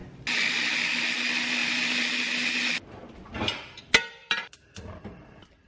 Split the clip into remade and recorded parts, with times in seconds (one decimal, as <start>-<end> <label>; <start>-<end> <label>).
0.0-4.2 recorded; 4.2-5.2 remade; 5.2-5.7 recorded